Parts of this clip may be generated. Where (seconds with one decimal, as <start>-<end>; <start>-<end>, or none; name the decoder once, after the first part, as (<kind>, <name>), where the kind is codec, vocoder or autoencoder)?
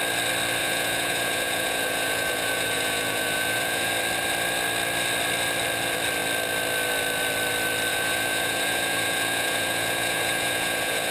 0.6-3.9 (vocoder, Vocos); 7.9-11.1